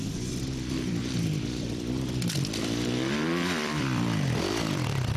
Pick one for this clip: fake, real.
fake